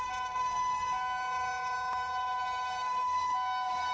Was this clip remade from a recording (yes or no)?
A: no